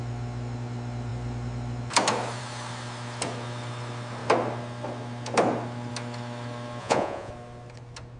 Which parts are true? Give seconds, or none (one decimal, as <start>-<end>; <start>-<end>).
0.0-6.8; 7.3-8.2